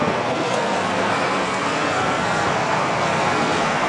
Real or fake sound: fake